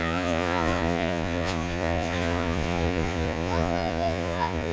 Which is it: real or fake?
fake